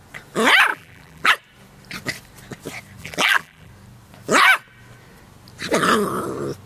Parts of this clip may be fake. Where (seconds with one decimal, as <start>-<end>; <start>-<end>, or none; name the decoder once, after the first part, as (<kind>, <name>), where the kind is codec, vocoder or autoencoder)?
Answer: 0.7-1.3 (vocoder, BigVGAN v2); 3.0-3.7